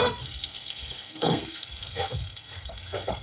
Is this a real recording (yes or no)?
no